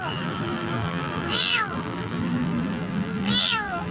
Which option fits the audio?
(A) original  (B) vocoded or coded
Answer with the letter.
B